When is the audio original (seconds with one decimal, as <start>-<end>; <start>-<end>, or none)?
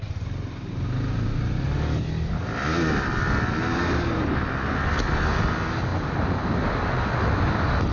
0.0-7.9